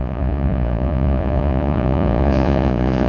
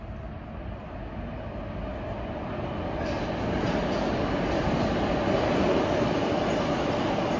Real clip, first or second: second